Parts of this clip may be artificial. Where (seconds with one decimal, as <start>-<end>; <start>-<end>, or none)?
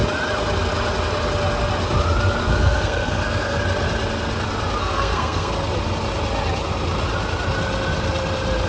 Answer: 2.4-3.6; 4.8-5.5